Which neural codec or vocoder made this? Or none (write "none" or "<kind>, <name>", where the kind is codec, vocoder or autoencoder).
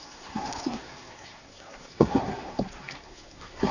codec, SNAC